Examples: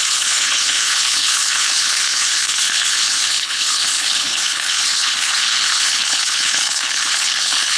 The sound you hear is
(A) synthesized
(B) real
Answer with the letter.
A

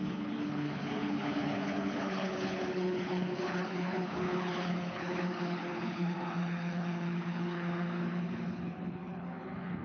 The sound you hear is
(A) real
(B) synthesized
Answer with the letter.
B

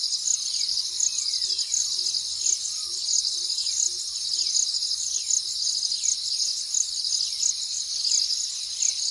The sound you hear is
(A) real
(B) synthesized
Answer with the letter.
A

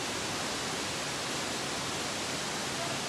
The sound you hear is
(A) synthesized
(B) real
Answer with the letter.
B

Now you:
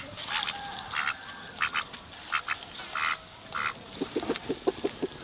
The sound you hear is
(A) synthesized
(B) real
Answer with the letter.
B